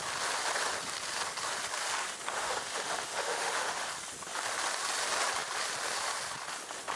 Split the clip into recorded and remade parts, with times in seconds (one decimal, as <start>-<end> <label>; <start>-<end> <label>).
0.0-2.4 recorded; 2.4-3.9 remade; 3.9-7.0 recorded